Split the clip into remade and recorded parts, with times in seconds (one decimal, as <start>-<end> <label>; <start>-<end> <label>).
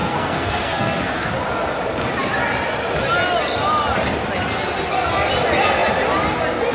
0.0-1.3 remade; 1.3-6.7 recorded